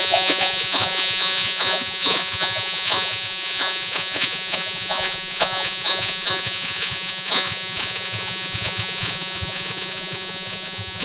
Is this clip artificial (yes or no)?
yes